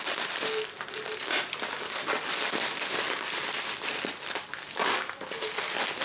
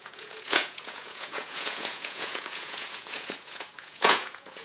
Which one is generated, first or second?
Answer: second